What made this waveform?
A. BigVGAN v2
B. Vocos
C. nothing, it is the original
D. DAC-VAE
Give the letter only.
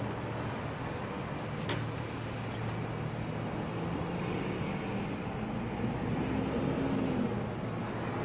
C